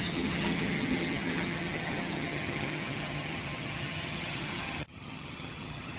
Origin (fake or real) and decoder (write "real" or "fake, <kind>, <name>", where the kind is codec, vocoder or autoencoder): fake, vocoder, HiFi-GAN